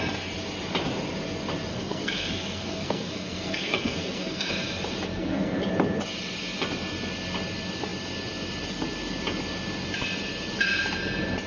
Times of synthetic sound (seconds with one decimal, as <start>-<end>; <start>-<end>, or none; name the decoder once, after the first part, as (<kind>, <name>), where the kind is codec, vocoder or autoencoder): 1.7-4.5 (codec, SNAC); 5.1-5.6